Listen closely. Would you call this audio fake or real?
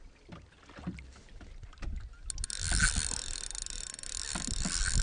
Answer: real